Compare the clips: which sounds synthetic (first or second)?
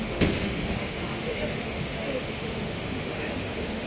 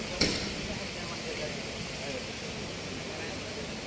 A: first